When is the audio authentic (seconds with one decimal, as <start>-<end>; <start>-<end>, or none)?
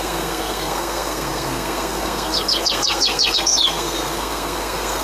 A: none